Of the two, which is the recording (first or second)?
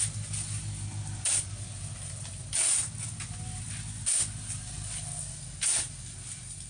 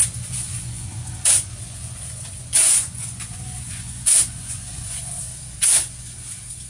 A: first